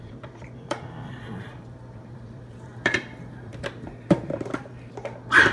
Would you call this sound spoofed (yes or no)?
yes